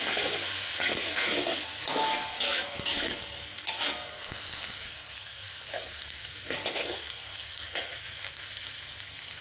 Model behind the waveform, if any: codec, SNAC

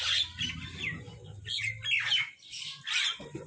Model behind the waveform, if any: none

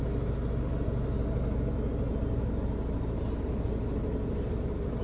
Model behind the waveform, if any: none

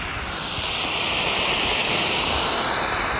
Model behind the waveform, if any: none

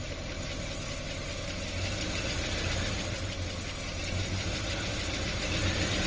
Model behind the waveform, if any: none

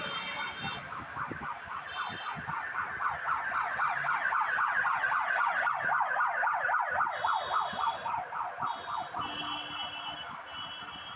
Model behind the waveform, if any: none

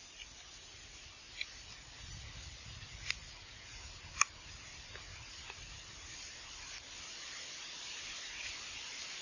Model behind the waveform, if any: none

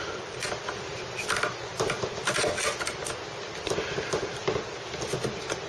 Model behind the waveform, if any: none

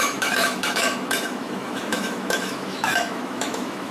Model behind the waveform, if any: autoencoder, DAC-VAE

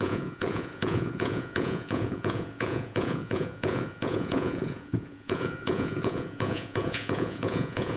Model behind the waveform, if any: vocoder, Vocos